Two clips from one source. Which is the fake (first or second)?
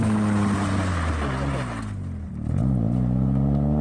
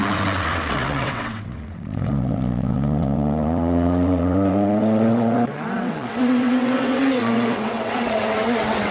second